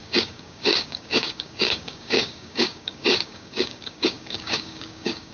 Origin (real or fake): fake